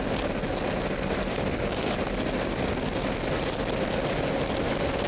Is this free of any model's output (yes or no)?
yes